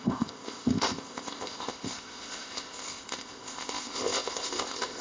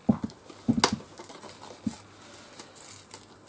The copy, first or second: first